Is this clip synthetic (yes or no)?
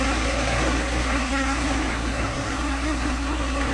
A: yes